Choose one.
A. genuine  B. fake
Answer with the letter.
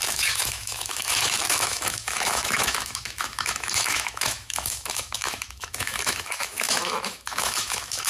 B